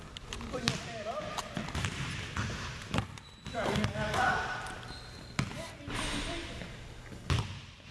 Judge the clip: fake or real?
real